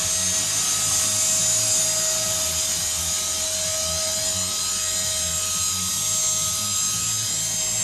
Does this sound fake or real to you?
real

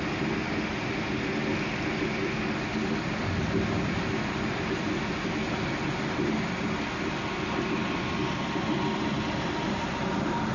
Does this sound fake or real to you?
real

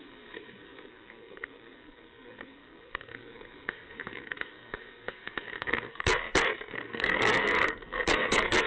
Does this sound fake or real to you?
fake